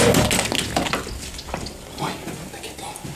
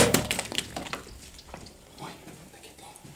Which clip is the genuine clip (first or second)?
first